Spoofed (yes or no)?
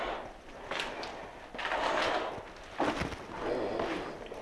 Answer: no